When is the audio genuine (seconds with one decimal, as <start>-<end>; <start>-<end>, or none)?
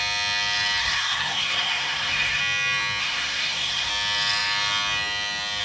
0.0-0.8; 2.4-3.0; 3.9-5.6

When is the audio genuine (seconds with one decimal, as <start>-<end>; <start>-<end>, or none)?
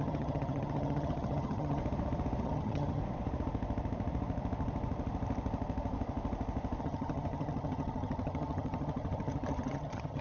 1.8-2.4; 3.0-6.8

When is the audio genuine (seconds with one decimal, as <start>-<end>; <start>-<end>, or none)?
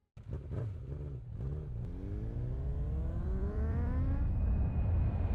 0.0-3.2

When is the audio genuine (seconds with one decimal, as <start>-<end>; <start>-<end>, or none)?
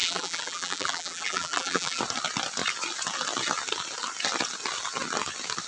2.0-5.7